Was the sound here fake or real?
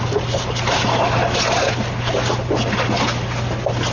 real